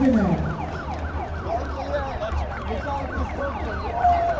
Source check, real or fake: real